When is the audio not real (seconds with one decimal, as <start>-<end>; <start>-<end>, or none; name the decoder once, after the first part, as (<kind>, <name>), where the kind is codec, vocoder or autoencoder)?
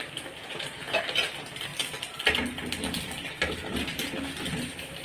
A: 0.4-1.0 (vocoder, Vocos)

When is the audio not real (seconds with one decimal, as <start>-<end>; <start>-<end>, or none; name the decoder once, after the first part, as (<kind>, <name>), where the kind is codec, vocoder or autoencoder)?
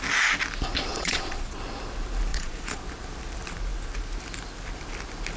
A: 0.9-1.6 (vocoder, Vocos); 2.3-2.8